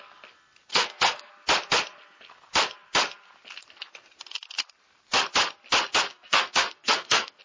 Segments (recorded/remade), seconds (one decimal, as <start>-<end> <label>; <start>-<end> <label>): 0.0-0.7 recorded; 0.7-1.3 remade; 1.3-6.1 recorded; 6.1-7.4 remade